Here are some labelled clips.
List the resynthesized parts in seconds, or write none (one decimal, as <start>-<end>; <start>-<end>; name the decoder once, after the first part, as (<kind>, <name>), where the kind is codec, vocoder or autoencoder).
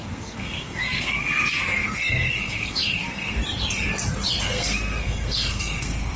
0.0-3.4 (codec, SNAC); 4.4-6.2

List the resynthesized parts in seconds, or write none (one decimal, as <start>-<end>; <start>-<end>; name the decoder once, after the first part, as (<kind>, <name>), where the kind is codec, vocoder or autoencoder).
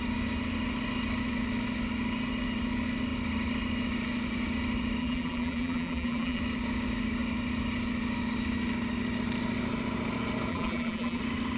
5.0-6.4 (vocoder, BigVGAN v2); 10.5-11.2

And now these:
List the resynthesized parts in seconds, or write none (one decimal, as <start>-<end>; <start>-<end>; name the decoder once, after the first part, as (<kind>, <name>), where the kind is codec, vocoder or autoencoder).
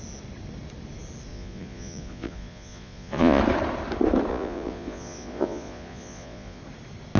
1.3-3.4 (vocoder, Vocos); 4.3-6.6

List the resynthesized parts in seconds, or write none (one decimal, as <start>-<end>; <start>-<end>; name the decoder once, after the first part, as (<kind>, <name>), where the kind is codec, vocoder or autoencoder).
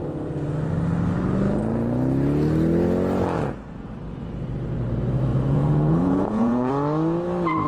5.3-6.7 (vocoder, Vocos)